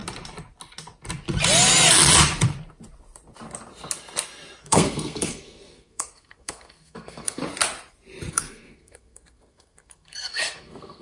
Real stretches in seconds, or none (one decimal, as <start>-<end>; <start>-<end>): 0.0-4.6; 7.4-8.3